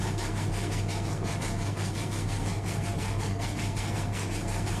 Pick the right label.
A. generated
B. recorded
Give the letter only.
A